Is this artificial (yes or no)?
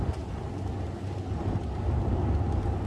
no